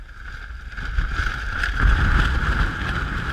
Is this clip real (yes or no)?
yes